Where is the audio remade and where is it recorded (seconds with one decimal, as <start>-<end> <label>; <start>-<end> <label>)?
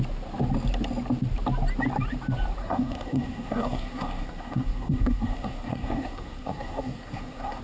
0.0-2.6 recorded; 2.6-7.6 remade